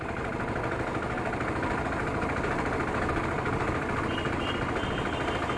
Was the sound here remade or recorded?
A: recorded